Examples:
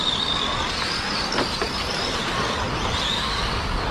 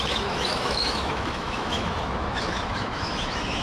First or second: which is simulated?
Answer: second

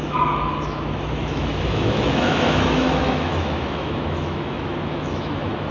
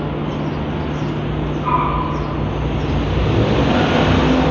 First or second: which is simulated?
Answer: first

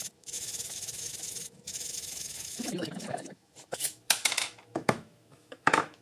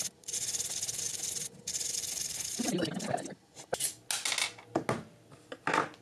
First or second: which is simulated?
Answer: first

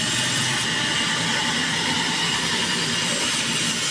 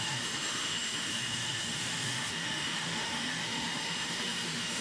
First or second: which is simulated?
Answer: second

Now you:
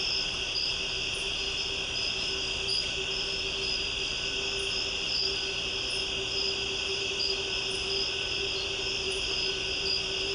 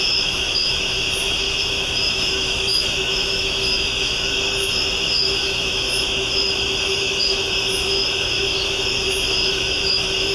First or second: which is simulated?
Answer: second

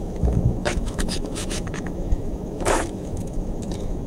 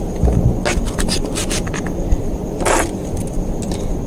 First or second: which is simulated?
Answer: first